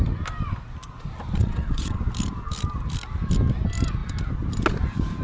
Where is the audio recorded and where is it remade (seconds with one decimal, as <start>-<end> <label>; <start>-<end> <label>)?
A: 0.0-1.4 recorded; 1.4-2.0 remade; 2.0-5.2 recorded